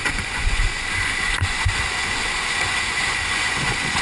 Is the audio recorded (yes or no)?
no